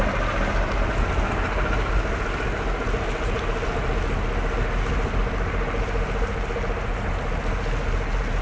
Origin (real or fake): real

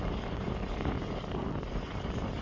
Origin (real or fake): real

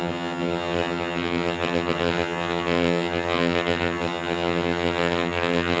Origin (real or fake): fake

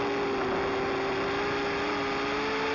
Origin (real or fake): real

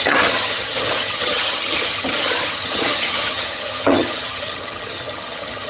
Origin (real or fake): fake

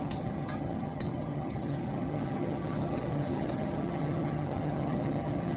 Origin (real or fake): fake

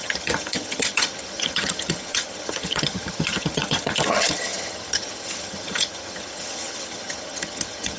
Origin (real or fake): fake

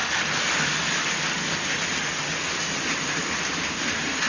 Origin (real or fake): real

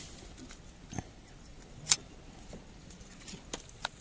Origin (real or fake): real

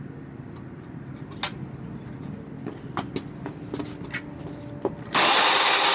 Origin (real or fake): real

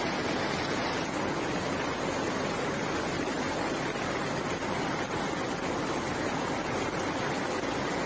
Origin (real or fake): real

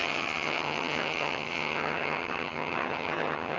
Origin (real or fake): fake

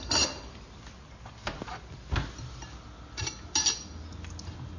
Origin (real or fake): real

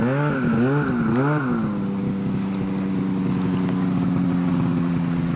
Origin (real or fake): real